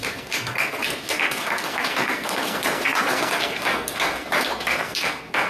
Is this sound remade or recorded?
remade